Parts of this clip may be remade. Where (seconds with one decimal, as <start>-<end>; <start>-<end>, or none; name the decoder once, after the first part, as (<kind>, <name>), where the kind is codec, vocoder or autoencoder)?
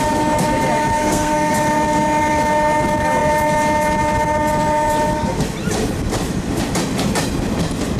0.9-1.5 (codec, SNAC)